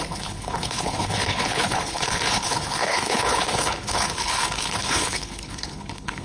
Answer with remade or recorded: remade